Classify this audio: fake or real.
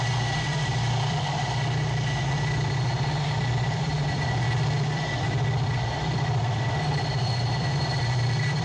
fake